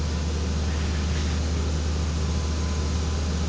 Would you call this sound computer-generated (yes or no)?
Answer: no